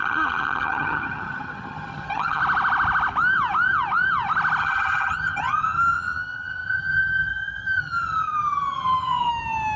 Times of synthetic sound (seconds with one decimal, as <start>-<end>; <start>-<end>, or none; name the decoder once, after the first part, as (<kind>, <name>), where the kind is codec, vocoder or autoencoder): 0.0-2.4 (vocoder, HiFi-GAN); 4.6-9.3